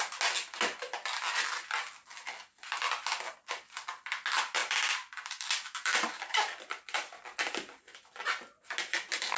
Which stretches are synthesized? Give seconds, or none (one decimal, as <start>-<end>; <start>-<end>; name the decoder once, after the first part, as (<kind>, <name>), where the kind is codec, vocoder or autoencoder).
4.6-7.8 (vocoder, BigVGAN v2)